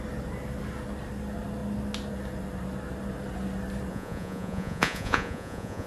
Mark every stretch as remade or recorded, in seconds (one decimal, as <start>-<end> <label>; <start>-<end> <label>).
0.0-3.9 recorded; 3.9-5.9 remade

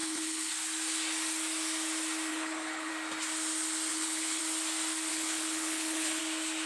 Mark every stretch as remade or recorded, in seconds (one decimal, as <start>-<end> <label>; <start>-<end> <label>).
0.0-0.5 remade; 0.5-2.3 recorded; 2.3-2.9 remade; 2.9-3.9 recorded; 3.9-4.4 remade; 4.4-5.1 recorded; 5.1-6.2 remade; 6.2-6.7 recorded

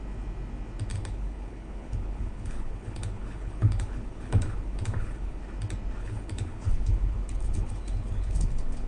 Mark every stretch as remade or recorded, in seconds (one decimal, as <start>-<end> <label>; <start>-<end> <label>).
0.0-0.9 recorded; 0.9-5.4 remade; 5.4-6.0 recorded; 6.0-8.9 remade